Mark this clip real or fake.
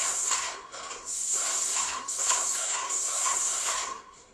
fake